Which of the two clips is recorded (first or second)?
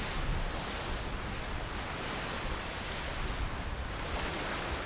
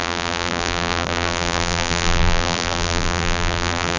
first